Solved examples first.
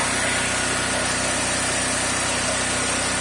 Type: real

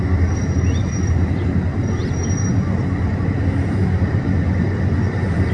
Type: real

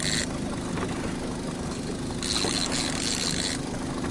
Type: real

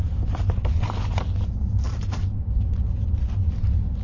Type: real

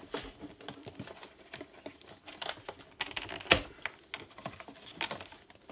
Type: real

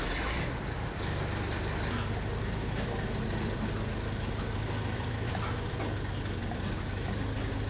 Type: real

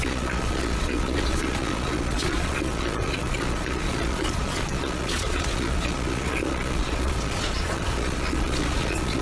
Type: fake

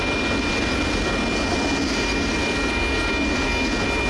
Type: real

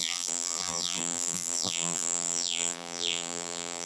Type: fake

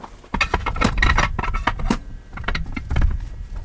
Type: real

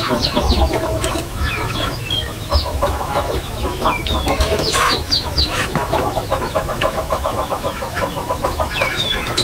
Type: fake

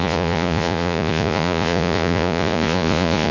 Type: fake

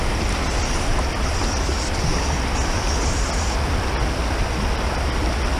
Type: real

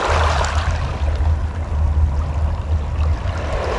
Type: real